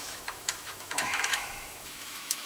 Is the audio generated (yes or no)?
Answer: yes